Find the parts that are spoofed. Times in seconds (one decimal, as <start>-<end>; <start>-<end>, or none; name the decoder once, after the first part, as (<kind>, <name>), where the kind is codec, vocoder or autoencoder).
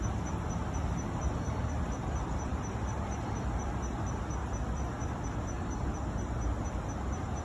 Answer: none